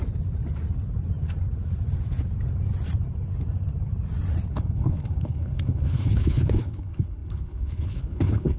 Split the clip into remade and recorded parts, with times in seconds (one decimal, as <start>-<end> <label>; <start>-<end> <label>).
0.0-4.5 recorded; 4.5-8.6 remade